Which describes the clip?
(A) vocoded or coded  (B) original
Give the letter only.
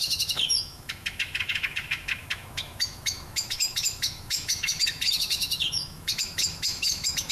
A